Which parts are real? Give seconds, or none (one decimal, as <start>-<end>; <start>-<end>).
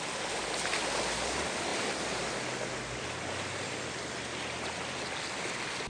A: 0.0-5.9